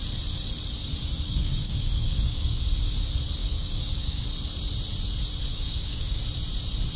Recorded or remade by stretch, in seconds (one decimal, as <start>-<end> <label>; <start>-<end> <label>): 0.0-0.9 recorded; 0.9-2.6 remade; 2.6-3.4 recorded; 3.4-4.2 remade; 4.2-5.5 recorded; 5.5-6.2 remade; 6.2-7.0 recorded